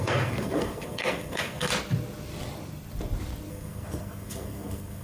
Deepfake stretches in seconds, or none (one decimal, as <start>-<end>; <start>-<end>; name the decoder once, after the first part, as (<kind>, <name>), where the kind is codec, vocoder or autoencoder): 0.0-1.7 (codec, SNAC); 3.5-5.0